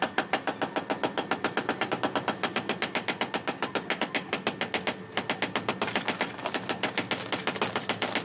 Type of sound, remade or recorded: recorded